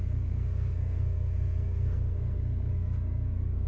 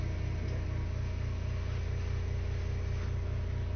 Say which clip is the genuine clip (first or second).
second